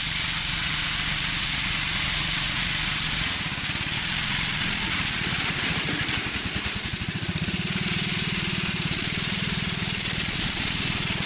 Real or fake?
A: fake